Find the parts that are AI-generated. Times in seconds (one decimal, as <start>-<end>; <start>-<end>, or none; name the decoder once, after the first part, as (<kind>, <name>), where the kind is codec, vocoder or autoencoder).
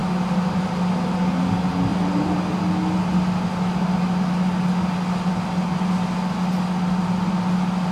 none